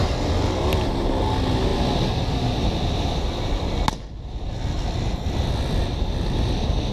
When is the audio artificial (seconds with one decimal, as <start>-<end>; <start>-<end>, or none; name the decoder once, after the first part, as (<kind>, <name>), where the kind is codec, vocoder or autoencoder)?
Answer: none